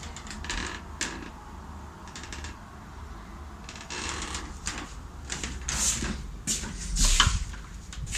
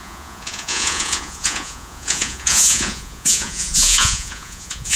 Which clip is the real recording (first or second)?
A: first